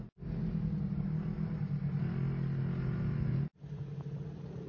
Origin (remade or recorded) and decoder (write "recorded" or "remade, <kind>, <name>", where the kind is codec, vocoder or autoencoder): recorded